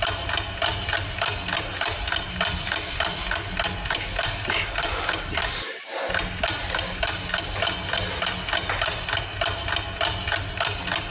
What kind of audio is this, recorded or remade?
recorded